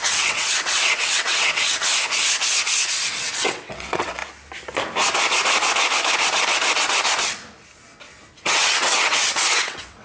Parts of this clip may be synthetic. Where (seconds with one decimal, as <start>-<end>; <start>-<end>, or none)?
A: 0.0-1.9; 2.8-4.2; 8.4-10.0